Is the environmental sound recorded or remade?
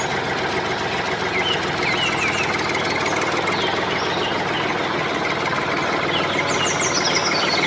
recorded